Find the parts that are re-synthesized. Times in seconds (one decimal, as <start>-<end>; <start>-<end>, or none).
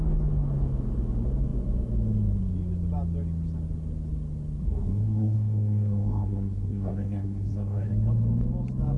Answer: 4.6-7.9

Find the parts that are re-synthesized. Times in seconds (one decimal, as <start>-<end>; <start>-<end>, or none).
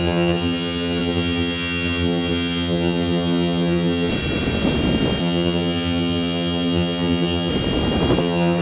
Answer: 0.0-4.1; 5.2-7.5; 8.2-8.6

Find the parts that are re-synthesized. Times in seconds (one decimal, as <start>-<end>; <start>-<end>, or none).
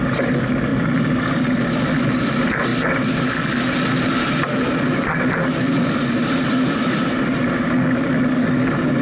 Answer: none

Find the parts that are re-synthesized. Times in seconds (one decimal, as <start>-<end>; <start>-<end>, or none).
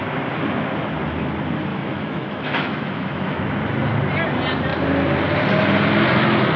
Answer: 1.7-3.4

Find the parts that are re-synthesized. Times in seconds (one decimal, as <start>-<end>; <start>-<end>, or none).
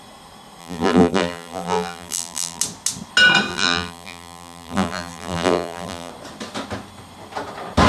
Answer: 0.6-2.6; 3.5-6.1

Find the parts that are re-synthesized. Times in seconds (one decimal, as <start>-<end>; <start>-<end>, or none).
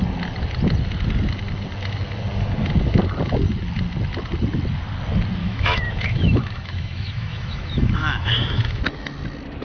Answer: 5.4-8.8